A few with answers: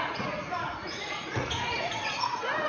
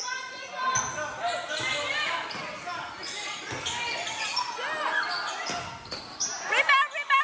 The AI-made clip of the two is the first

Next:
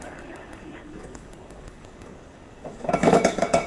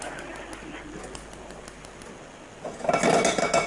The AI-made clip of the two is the first